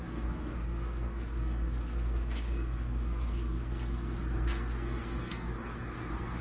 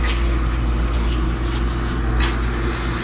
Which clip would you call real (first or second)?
second